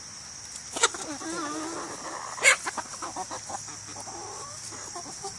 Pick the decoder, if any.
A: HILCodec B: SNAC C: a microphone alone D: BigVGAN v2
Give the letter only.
C